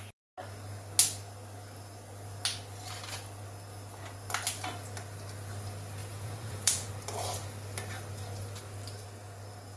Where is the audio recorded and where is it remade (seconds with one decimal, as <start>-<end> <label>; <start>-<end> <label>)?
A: 0.0-6.0 recorded; 6.0-6.9 remade; 6.9-9.8 recorded

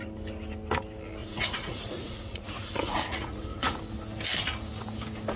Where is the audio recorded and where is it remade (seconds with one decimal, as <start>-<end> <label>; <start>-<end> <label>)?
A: 0.0-1.2 recorded; 1.2-3.8 remade; 3.8-5.4 recorded

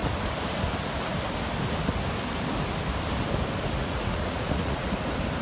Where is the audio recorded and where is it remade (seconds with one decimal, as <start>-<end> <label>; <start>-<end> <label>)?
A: 0.0-3.8 recorded; 3.8-4.9 remade; 4.9-5.4 recorded